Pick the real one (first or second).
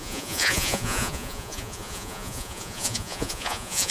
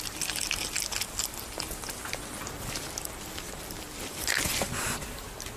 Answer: second